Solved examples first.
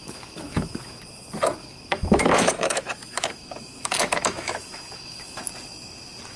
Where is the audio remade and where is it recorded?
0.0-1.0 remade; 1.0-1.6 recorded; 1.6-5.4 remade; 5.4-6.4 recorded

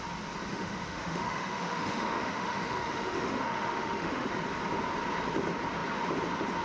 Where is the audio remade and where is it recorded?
0.0-0.5 recorded; 0.5-4.3 remade; 4.3-6.6 recorded

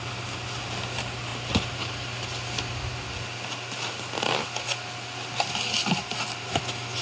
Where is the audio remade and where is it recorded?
0.0-6.4 recorded; 6.4-7.0 remade

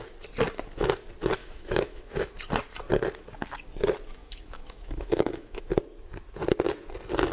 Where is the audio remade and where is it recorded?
0.0-1.4 recorded; 1.4-2.3 remade; 2.3-4.2 recorded; 4.2-5.6 remade; 5.6-7.3 recorded

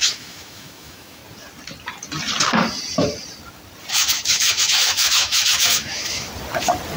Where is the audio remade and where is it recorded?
0.0-1.2 remade; 1.2-3.9 recorded; 3.9-6.3 remade; 6.3-7.0 recorded

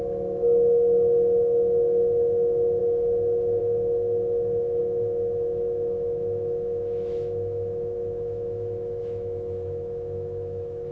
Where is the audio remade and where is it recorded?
0.0-10.9 remade

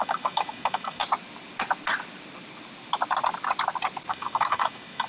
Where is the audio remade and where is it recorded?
0.0-1.0 remade; 1.0-4.1 recorded; 4.1-5.1 remade